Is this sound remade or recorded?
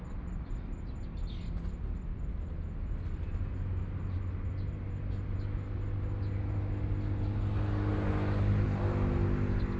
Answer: recorded